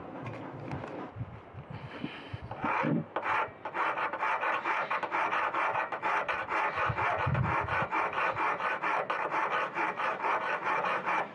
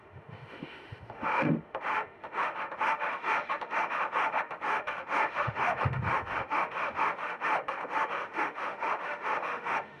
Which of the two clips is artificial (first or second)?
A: second